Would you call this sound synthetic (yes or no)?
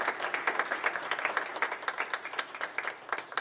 no